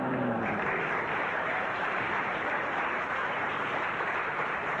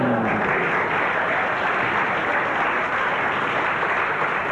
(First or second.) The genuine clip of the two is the second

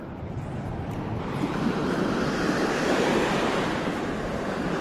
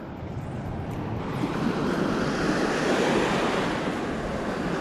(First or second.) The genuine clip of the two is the second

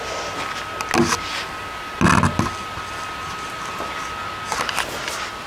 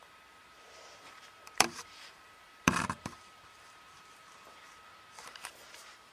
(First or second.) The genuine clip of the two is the first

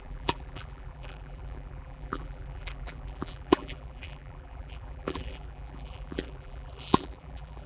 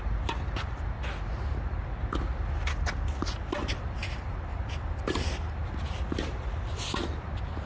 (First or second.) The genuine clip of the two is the second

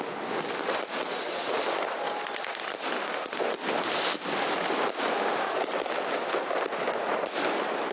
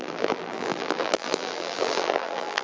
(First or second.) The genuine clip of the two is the first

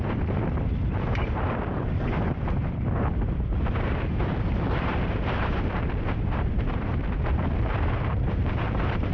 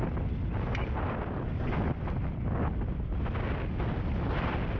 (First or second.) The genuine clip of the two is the second